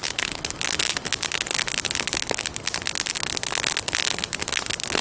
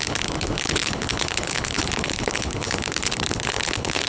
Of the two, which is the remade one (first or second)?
second